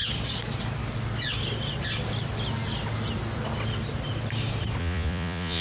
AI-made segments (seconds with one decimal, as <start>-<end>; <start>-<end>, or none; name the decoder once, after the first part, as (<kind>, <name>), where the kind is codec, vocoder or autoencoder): 4.8-5.6 (vocoder, Vocos)